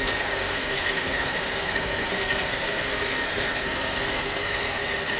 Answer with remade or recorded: remade